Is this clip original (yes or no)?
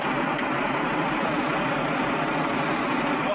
yes